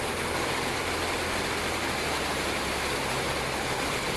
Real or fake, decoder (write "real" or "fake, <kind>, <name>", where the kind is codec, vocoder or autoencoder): real